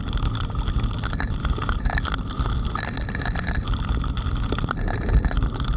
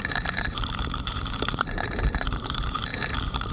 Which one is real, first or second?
first